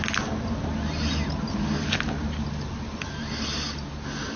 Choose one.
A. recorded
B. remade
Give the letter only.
A